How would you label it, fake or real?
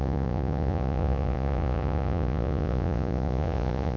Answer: fake